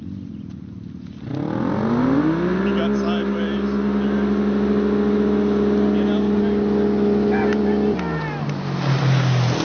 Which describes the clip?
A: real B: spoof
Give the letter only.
A